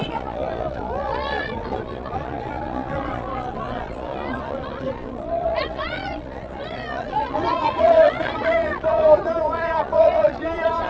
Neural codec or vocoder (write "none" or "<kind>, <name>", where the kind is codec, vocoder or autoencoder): vocoder, Vocos